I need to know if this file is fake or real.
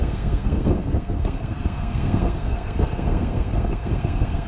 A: fake